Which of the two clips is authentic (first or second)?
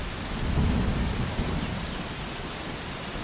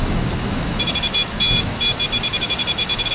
first